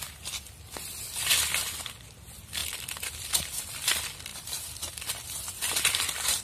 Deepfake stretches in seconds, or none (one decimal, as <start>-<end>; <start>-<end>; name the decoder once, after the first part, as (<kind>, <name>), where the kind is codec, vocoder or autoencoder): 2.6-3.4 (vocoder, BigVGAN v2); 4.3-6.4